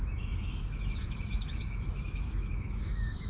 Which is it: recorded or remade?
remade